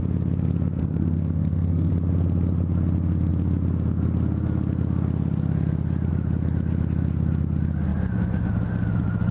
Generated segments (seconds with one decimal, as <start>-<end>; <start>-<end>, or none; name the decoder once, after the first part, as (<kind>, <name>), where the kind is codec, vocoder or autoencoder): 0.8-1.9 (codec, SNAC)